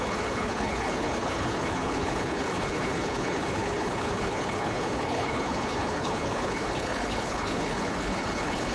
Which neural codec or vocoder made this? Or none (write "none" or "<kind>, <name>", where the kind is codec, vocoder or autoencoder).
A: codec, HILCodec